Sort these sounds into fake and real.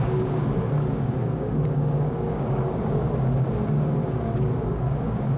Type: fake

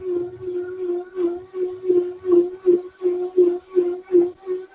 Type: real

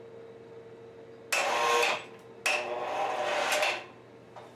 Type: real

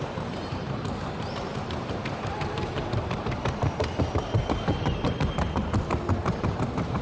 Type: fake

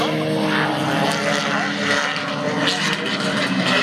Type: real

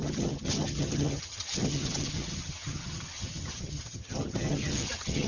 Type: fake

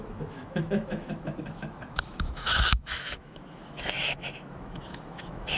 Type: fake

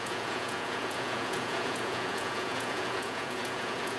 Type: fake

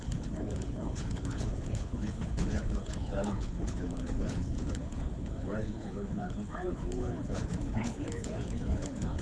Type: fake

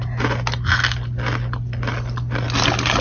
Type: real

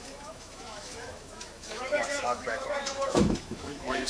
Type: fake